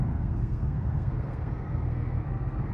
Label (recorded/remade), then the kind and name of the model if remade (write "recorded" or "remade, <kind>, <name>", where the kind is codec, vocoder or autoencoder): remade, codec, SNAC